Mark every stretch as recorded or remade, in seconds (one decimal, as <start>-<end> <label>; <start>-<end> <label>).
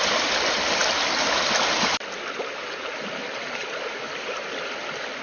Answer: 0.0-5.2 recorded